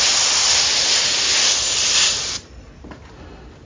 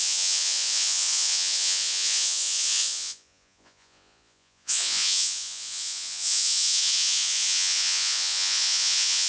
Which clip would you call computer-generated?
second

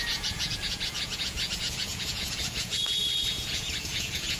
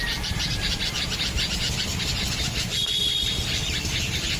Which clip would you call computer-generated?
first